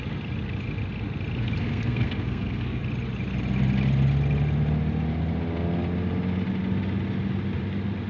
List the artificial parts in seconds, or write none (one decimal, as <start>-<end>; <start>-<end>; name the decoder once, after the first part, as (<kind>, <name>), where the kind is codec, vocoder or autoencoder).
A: 1.6-2.8 (codec, SNAC)